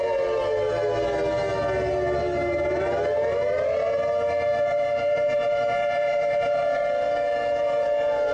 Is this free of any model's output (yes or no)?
yes